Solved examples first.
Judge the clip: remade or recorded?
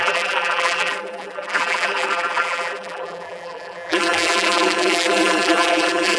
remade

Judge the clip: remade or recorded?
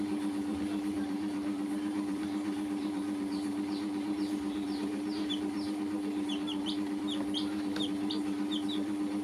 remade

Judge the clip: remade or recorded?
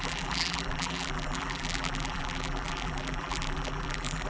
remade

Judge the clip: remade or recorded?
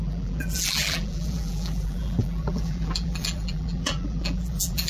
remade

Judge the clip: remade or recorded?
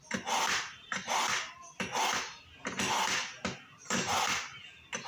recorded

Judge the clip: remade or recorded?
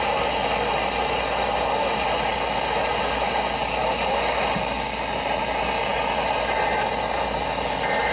recorded